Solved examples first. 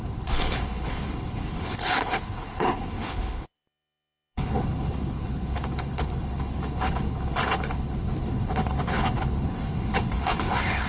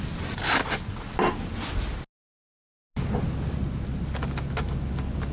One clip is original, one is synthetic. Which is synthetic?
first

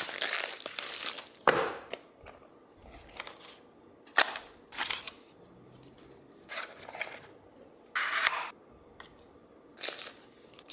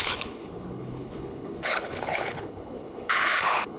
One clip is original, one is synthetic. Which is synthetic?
second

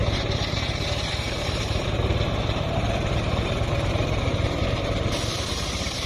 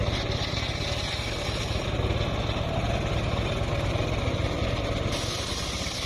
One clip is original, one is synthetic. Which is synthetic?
first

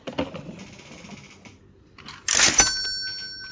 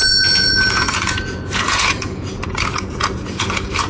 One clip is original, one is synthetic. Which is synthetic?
second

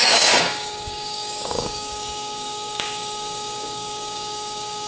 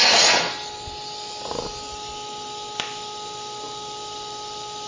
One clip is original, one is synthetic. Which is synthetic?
first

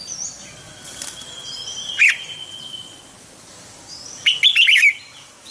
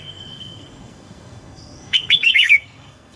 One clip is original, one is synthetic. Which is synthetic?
second